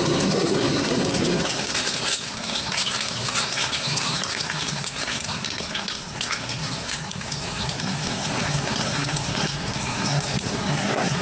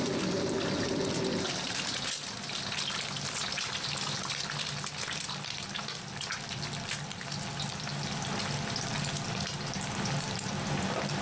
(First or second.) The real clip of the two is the second